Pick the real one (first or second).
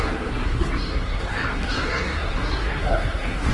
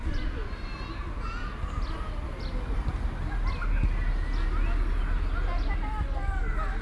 second